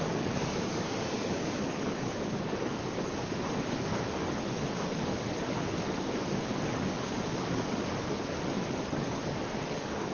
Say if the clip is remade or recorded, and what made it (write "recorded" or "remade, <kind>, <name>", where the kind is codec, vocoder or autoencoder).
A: remade, codec, DAC